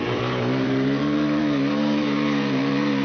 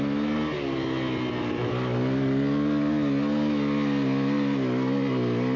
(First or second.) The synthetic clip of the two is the first